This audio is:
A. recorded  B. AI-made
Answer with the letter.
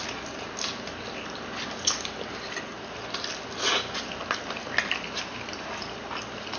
A